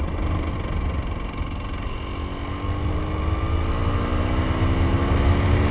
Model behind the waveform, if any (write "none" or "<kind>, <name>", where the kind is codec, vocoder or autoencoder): none